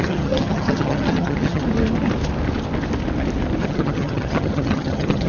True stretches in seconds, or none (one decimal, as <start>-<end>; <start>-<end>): 1.6-3.6